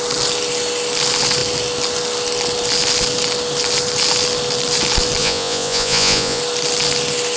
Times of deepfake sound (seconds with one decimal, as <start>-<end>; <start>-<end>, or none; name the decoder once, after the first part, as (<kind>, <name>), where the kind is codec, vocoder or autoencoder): 5.2-6.4 (vocoder, Vocos)